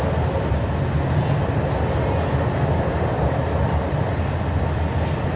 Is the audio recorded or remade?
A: recorded